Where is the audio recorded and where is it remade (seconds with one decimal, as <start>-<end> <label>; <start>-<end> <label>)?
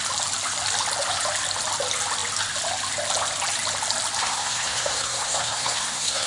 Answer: 0.0-4.2 recorded; 4.2-6.3 remade